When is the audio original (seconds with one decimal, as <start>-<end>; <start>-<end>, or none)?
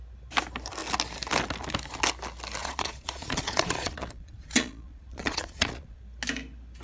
0.0-2.6; 6.0-6.8